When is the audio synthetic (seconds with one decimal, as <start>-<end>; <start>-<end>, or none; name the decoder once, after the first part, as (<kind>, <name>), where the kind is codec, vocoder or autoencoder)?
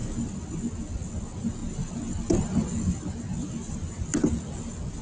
none